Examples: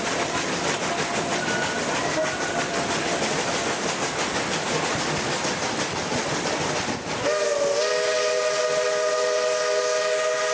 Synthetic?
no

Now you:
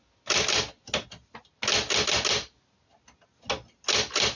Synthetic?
no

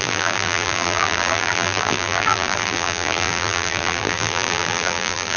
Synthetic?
yes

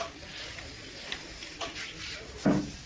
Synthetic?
no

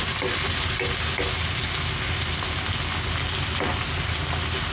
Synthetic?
no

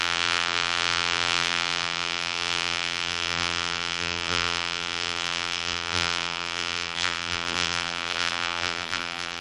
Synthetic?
yes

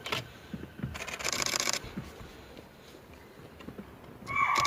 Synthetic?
no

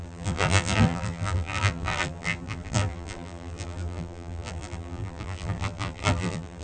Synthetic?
yes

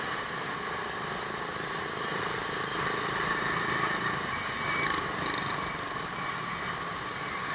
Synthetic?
yes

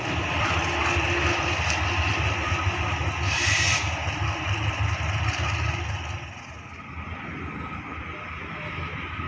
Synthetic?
no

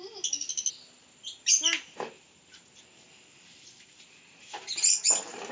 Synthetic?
no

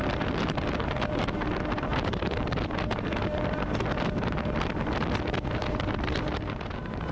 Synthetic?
yes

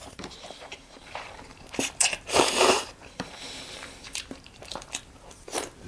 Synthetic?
yes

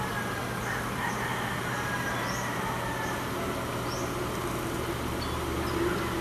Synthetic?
no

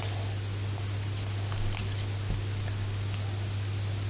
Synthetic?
no